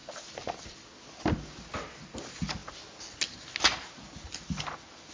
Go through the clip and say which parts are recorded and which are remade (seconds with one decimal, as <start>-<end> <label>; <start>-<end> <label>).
0.0-5.1 recorded